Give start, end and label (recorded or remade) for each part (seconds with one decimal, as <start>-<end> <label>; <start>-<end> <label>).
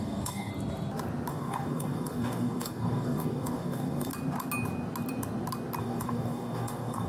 0.0-0.5 remade; 0.5-1.3 recorded; 1.3-4.1 remade; 4.1-5.8 recorded; 5.8-7.1 remade